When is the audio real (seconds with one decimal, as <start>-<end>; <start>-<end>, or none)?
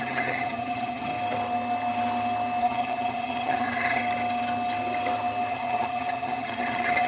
1.1-2.6; 4.0-5.5